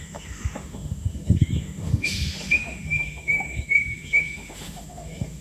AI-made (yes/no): yes